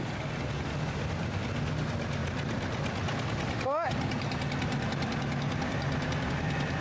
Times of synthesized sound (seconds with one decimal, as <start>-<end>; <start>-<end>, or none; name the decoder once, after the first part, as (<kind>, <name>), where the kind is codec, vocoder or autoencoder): none